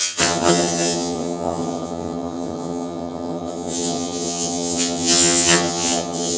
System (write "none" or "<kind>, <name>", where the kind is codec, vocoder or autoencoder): vocoder, HiFi-GAN